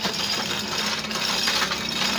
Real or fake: real